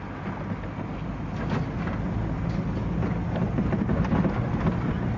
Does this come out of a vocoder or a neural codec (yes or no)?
no